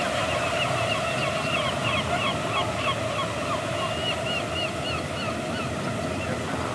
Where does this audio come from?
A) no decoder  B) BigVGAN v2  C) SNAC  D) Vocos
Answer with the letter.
A